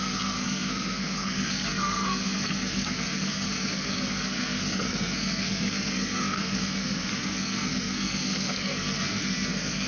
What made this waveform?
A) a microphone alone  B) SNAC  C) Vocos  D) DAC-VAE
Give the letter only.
B